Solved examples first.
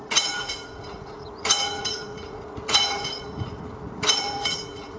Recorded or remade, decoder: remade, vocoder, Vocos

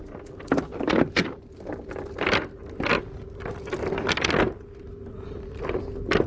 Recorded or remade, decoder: recorded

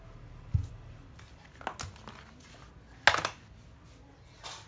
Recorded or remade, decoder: recorded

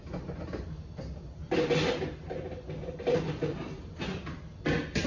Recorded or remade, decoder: recorded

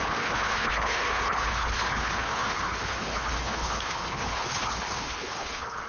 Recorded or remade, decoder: remade, codec, HILCodec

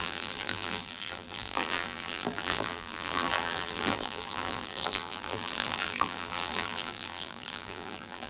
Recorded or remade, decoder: remade, vocoder, BigVGAN v2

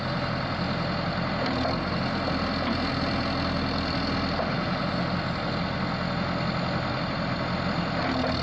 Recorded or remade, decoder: recorded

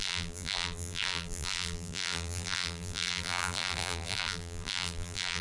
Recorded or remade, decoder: remade, vocoder, BigVGAN v2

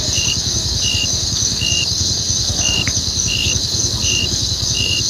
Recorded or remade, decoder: remade, codec, DAC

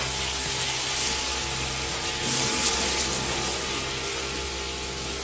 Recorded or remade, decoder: recorded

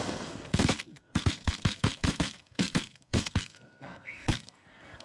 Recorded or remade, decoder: remade, codec, SNAC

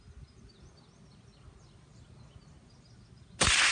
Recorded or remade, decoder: recorded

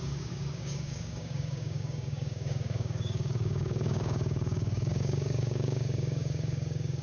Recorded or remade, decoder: remade, codec, DAC